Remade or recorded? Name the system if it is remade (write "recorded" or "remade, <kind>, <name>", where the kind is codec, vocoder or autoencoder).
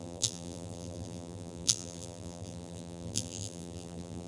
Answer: remade, vocoder, BigVGAN v2